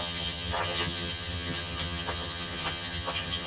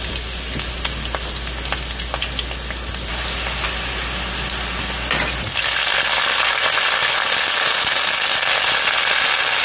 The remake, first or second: first